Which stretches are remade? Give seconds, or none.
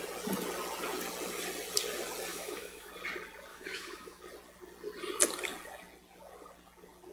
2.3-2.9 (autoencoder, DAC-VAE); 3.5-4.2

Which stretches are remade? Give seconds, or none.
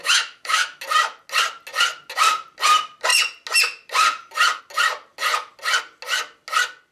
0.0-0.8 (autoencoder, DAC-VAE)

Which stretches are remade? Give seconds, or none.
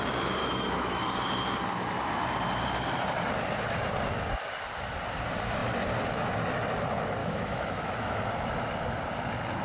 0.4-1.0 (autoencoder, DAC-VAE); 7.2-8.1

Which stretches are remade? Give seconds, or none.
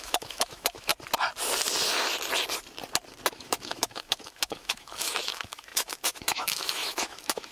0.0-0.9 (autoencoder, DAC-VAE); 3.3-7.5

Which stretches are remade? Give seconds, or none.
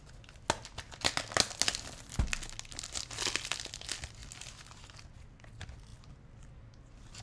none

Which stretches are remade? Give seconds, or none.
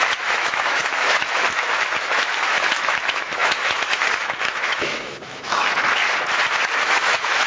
0.0-6.0 (autoencoder, DAC-VAE); 6.8-7.5